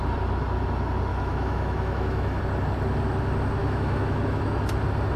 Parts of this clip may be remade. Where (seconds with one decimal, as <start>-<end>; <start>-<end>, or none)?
1.1-2.4; 3.6-4.4